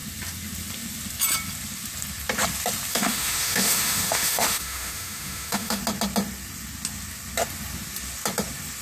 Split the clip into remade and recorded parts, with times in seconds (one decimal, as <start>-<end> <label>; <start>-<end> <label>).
0.0-2.9 recorded; 2.9-5.8 remade; 5.8-8.8 recorded